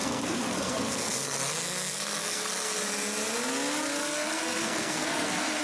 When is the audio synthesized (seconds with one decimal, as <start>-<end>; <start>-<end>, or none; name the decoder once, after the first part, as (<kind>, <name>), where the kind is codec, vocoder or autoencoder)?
0.0-2.8 (codec, SNAC); 4.0-5.6